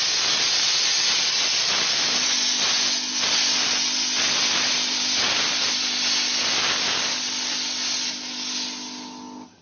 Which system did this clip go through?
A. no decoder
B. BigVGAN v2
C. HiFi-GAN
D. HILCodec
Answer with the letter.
A